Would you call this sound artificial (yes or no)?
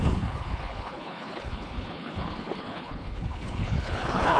yes